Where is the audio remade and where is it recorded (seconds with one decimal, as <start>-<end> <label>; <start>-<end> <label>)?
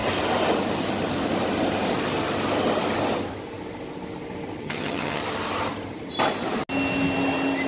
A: 0.0-4.6 recorded; 4.6-5.2 remade; 5.2-7.7 recorded